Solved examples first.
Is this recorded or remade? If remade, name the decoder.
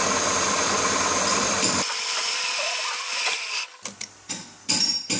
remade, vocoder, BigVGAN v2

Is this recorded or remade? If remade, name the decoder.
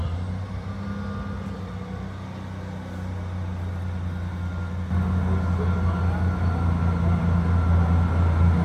recorded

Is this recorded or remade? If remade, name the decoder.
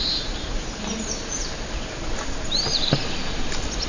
recorded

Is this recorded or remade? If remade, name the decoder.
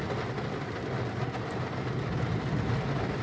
recorded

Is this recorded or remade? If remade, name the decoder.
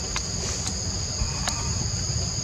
recorded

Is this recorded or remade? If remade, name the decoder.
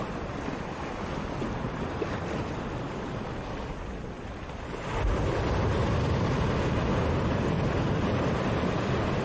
recorded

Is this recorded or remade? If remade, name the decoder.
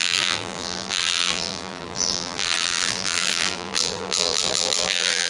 remade, vocoder, BigVGAN v2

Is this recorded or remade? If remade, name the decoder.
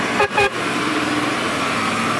remade, vocoder, BigVGAN v2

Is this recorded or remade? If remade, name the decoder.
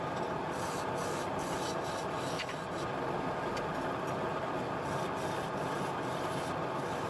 recorded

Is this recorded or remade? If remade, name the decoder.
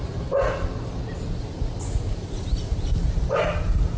recorded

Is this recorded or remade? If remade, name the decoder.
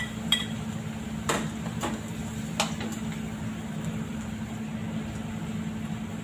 recorded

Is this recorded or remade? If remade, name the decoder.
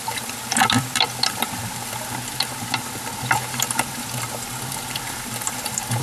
remade, vocoder, BigVGAN v2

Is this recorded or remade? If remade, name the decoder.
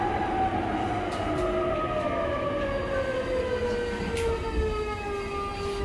recorded